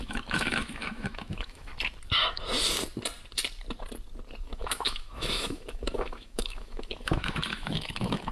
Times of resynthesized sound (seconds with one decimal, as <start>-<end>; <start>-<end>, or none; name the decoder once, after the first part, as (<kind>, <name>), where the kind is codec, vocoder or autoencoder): 0.0-1.7 (autoencoder, DAC-VAE); 4.4-8.3